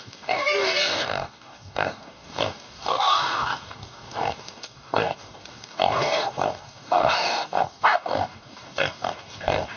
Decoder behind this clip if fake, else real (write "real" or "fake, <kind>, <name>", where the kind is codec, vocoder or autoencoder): fake, codec, DAC